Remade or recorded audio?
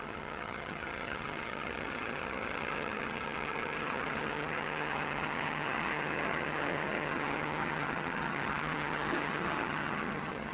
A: remade